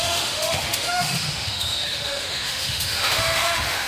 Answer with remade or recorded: remade